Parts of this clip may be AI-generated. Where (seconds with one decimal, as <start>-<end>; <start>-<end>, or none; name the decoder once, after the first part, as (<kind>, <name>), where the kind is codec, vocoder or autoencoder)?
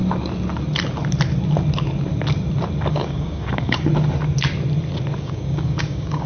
2.9-3.9 (codec, DAC); 5.2-6.3